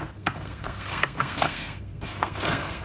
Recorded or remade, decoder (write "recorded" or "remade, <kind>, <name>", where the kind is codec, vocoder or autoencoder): remade, codec, SNAC